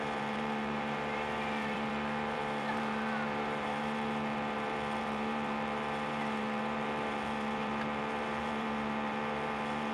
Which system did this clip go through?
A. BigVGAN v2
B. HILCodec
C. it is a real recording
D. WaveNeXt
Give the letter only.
A